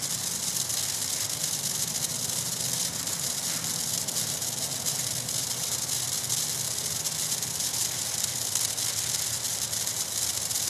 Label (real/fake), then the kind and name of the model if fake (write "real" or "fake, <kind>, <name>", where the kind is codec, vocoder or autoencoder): real